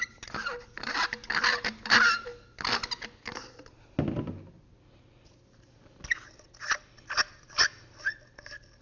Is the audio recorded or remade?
recorded